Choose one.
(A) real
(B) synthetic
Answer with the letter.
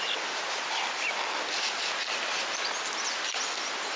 A